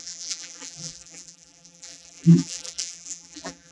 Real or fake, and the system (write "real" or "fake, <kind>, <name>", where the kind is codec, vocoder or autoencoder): fake, vocoder, BigVGAN v2